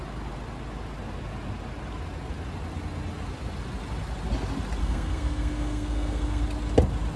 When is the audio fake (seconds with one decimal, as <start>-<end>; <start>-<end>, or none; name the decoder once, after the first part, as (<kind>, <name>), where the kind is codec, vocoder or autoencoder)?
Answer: 4.8-6.4 (codec, SNAC)